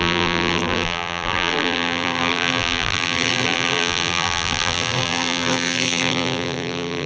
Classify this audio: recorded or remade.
remade